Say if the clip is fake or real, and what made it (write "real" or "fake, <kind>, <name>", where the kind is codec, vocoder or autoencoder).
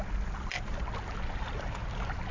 real